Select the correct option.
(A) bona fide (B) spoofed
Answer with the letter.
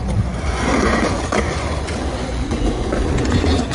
B